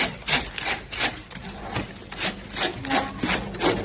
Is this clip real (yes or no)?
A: yes